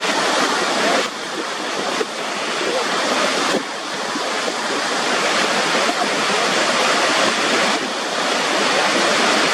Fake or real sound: real